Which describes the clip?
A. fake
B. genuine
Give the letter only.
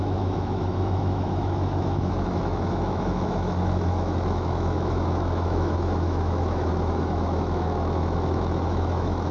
A